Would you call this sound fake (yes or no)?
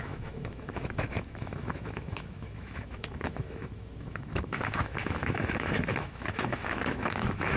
yes